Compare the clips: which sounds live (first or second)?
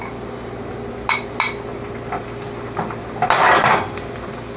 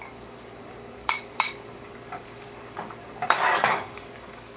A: first